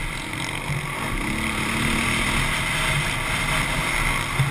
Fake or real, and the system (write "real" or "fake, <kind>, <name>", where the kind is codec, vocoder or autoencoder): real